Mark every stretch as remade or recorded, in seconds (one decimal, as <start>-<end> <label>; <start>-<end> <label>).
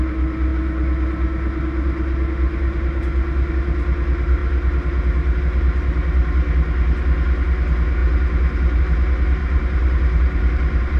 0.0-9.4 recorded; 9.4-11.0 remade